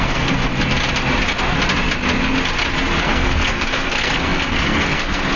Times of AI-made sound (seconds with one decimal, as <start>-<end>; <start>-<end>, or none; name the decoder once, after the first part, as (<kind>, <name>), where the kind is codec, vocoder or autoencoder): 0.0-0.5 (codec, SNAC); 3.0-5.4